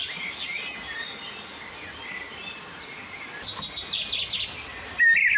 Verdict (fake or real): real